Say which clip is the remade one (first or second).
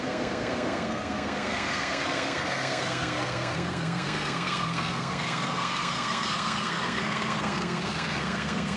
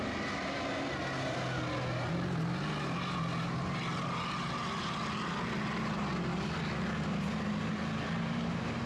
first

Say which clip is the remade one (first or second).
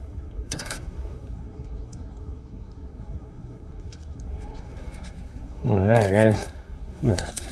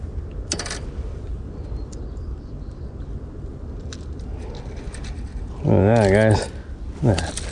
first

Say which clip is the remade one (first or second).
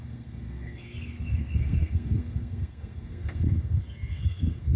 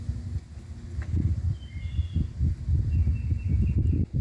first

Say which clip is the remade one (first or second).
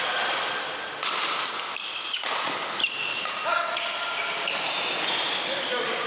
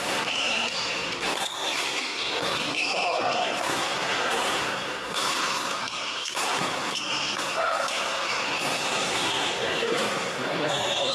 second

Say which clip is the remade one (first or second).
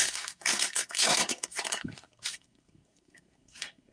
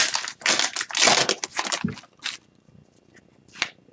first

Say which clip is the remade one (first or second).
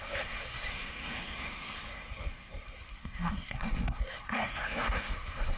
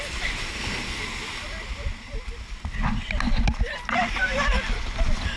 first